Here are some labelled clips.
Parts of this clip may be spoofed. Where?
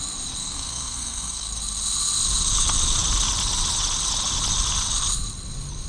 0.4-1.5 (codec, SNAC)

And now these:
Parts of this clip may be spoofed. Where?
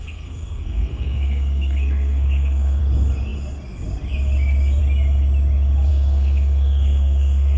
0.0-2.8 (codec, SNAC); 5.9-7.6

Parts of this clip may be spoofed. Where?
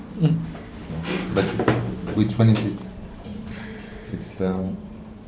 0.8-2.4 (vocoder, BigVGAN v2); 3.3-5.3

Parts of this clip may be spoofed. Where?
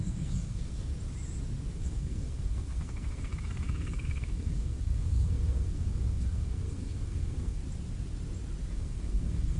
0.0-0.9 (codec, SNAC); 1.7-7.6; 8.7-9.6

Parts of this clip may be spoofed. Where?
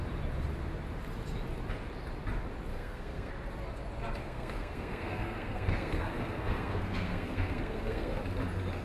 2.7-3.3 (codec, SNAC); 4.2-8.2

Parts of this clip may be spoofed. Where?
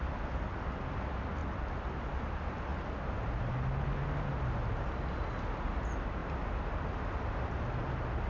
none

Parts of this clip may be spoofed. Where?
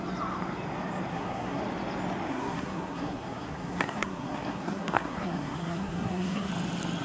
1.1-1.6 (codec, SNAC); 2.3-6.5